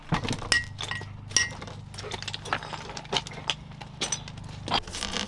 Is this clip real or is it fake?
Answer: real